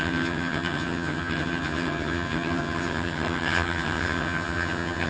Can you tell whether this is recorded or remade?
remade